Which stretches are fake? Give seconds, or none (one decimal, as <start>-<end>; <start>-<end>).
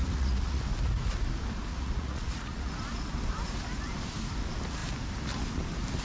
0.0-0.6; 1.7-2.7